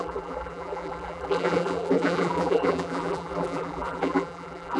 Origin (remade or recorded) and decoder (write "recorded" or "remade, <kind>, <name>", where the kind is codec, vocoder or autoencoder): remade, vocoder, BigVGAN v2